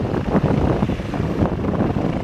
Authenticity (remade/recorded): remade